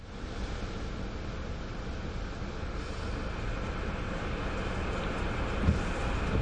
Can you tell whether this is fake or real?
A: real